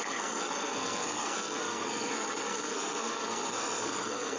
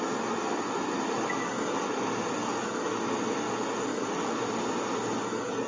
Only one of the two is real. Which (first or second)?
second